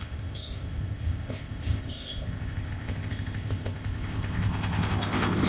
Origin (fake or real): fake